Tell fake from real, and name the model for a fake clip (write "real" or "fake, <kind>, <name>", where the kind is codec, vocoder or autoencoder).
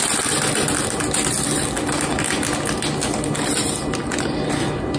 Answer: real